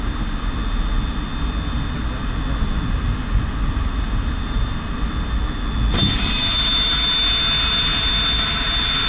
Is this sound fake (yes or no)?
no